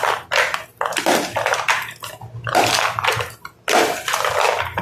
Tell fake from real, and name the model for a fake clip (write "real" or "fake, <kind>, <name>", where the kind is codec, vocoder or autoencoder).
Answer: real